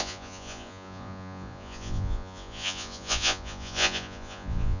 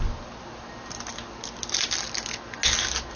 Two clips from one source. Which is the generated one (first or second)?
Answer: first